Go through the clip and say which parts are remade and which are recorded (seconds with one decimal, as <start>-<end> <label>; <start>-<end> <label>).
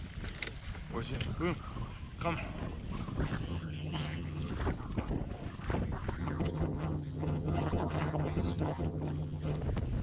0.0-3.5 recorded; 3.5-4.5 remade; 4.5-6.2 recorded; 6.2-9.6 remade; 9.6-10.0 recorded